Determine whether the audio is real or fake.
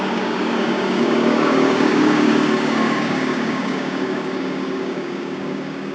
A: fake